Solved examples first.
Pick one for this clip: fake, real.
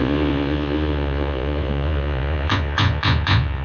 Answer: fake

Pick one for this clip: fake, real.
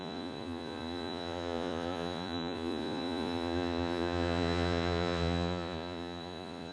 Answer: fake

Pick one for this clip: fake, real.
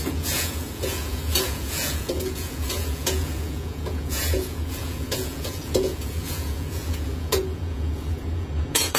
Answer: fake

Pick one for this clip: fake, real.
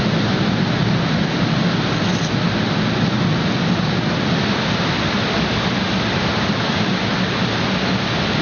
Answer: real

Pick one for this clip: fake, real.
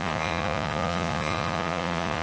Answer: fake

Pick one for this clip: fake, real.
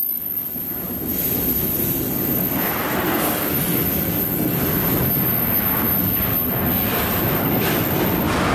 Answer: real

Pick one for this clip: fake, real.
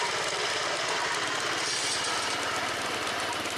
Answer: real